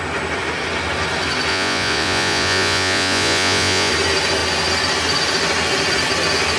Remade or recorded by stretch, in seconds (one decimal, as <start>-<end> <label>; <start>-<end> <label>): 0.0-1.5 recorded; 1.5-3.9 remade; 3.9-6.6 recorded